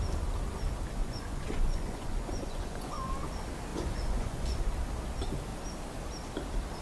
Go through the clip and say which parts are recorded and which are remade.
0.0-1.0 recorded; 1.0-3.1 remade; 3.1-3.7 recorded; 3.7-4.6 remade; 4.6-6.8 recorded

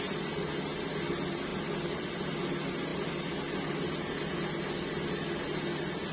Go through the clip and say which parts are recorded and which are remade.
0.0-6.1 recorded

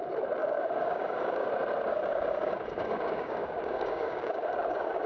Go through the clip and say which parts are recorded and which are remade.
0.0-0.4 recorded; 0.4-1.5 remade; 1.5-1.9 recorded; 1.9-5.1 remade

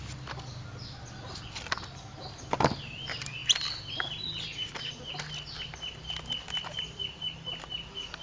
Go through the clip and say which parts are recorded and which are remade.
0.0-8.2 recorded

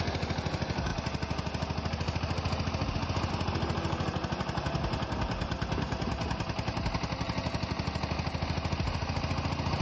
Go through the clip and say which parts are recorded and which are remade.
0.0-9.8 recorded

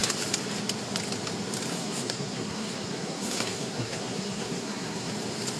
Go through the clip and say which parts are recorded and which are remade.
0.0-1.7 recorded; 1.7-5.1 remade; 5.1-5.6 recorded

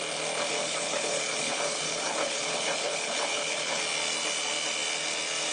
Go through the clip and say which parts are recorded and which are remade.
0.0-0.5 recorded; 0.5-3.8 remade; 3.8-5.5 recorded

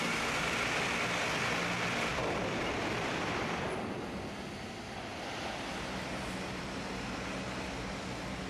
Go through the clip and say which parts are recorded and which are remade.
0.0-2.1 recorded; 2.1-3.7 remade; 3.7-5.1 recorded; 5.1-7.7 remade; 7.7-8.5 recorded